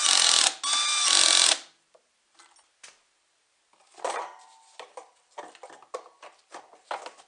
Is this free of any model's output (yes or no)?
yes